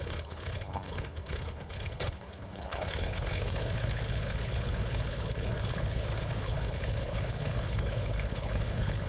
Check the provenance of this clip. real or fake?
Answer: fake